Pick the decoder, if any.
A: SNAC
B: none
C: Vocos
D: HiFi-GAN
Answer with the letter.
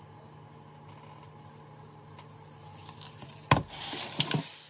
B